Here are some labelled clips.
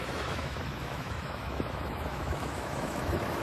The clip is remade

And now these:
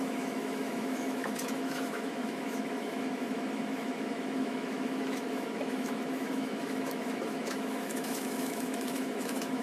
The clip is remade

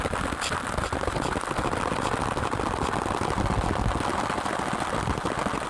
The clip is recorded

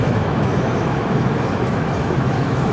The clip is remade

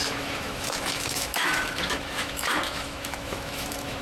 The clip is remade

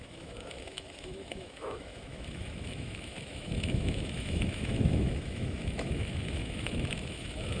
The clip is remade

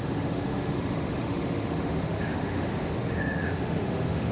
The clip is remade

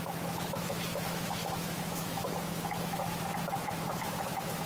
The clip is remade